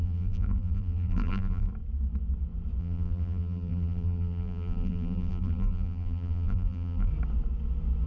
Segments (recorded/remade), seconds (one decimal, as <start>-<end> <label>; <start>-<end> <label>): 0.0-1.7 remade; 1.7-2.8 recorded; 2.8-7.1 remade; 7.1-8.1 recorded